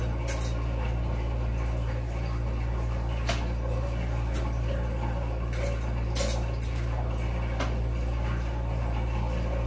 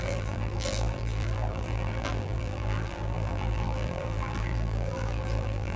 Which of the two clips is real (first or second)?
first